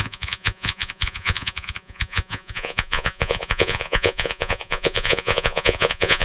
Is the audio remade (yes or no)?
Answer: yes